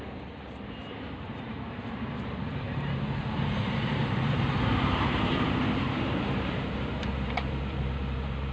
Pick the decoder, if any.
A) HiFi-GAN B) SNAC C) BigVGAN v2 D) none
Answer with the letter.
C